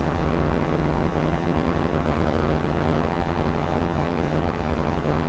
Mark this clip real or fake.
fake